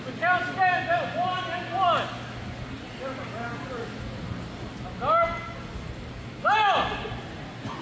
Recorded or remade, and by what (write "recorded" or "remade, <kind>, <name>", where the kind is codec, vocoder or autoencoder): recorded